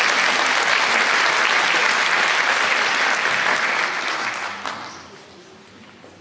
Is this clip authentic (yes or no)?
yes